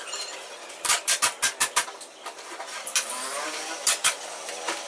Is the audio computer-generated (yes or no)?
no